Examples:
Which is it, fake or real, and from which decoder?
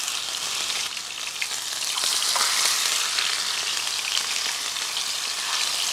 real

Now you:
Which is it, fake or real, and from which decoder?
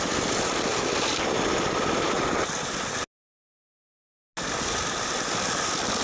real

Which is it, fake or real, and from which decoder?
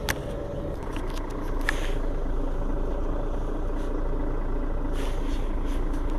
real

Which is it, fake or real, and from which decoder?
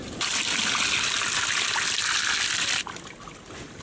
real